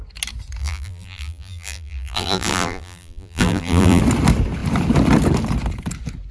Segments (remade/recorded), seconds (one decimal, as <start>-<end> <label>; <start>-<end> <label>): 0.0-0.6 recorded; 0.6-4.0 remade; 4.0-6.3 recorded